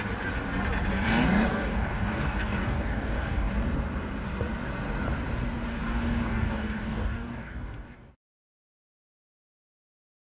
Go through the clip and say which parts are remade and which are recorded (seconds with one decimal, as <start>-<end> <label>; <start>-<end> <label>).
0.0-1.5 recorded; 1.5-3.5 remade; 3.5-5.7 recorded; 5.7-8.1 remade; 8.1-10.3 recorded

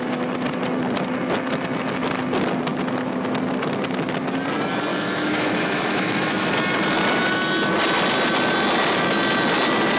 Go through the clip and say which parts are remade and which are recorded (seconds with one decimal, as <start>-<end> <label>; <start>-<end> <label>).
0.0-4.9 recorded; 4.9-6.5 remade; 6.5-10.0 recorded

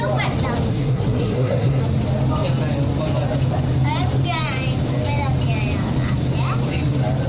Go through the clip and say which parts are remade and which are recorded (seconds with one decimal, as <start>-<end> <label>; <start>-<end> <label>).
0.0-0.7 recorded; 0.7-1.8 remade; 1.8-7.3 recorded

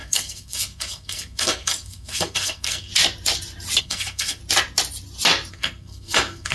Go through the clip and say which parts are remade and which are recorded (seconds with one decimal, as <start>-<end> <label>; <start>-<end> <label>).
0.0-2.9 remade; 2.9-3.8 recorded; 3.8-4.4 remade; 4.4-5.5 recorded; 5.5-6.5 remade

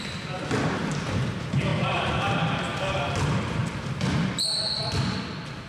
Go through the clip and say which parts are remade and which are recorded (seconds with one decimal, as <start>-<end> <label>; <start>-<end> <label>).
0.0-1.7 recorded; 1.7-3.1 remade; 3.1-5.7 recorded

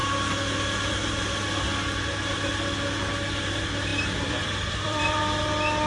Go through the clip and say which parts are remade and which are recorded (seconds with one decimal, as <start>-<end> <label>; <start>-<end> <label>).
0.0-3.9 recorded; 3.9-5.2 remade; 5.2-5.9 recorded

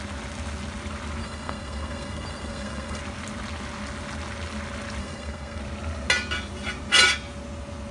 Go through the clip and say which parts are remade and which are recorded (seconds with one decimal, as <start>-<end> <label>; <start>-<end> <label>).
0.0-1.2 recorded; 1.2-3.0 remade; 3.0-5.0 recorded; 5.0-5.6 remade; 5.6-7.9 recorded